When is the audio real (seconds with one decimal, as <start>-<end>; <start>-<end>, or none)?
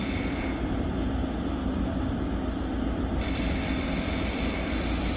0.0-5.2